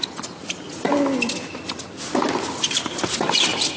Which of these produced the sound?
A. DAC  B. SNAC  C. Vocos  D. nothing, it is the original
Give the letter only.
D